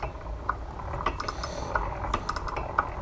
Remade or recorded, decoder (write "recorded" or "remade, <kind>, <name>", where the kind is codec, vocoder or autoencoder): recorded